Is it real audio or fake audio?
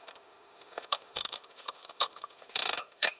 fake